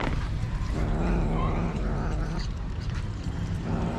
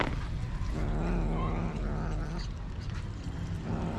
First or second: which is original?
second